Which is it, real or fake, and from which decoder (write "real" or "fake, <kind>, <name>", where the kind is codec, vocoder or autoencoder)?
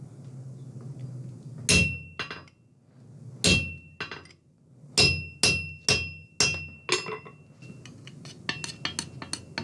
real